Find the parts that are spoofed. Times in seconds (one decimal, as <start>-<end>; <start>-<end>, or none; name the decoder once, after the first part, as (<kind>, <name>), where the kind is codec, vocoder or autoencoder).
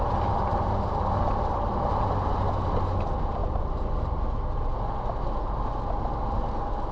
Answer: none